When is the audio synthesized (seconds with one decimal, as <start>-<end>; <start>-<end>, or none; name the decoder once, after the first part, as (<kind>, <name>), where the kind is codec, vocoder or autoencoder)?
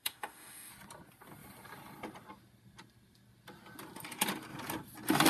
0.0-0.7 (autoencoder, DAC-VAE)